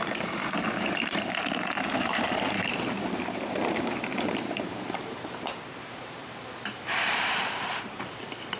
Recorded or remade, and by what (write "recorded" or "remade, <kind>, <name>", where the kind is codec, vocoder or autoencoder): remade, vocoder, BigVGAN v2